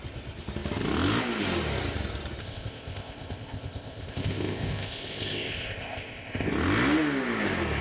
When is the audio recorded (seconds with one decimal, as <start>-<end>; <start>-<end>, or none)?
0.0-2.4; 6.5-7.8